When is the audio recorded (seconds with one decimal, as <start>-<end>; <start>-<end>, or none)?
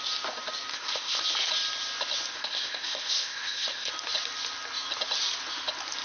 0.0-0.7; 1.2-2.3; 3.9-6.0